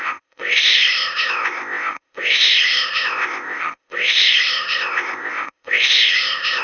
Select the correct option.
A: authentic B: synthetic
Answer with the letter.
B